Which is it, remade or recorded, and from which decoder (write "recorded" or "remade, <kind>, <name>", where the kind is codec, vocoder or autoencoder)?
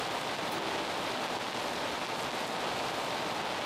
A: recorded